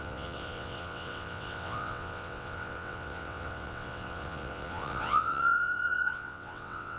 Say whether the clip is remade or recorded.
remade